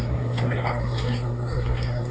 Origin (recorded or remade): remade